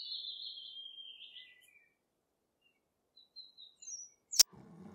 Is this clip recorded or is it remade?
recorded